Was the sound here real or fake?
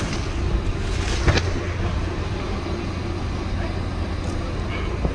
real